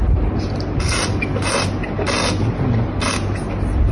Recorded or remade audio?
recorded